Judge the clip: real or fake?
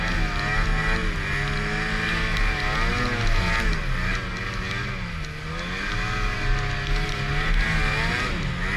real